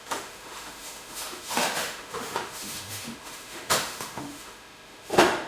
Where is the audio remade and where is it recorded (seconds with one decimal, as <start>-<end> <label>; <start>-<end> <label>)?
0.0-5.5 remade

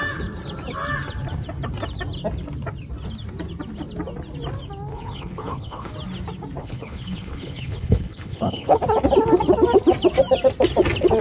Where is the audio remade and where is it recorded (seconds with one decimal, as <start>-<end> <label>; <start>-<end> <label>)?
0.0-4.9 recorded; 4.9-5.9 remade; 5.9-6.6 recorded; 6.6-8.8 remade; 8.8-11.2 recorded